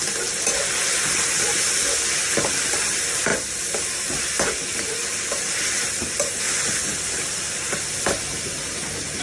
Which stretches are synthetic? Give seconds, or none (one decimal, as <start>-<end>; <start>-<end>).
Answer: none